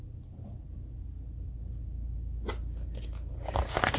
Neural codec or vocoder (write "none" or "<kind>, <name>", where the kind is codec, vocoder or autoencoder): none